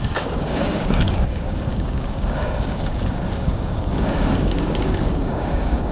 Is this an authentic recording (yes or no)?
no